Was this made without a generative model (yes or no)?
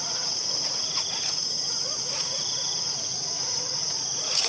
no